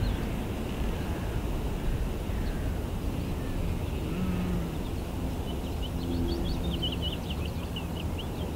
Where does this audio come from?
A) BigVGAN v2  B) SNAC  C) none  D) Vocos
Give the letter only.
C